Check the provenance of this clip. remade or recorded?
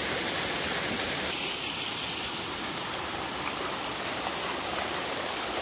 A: recorded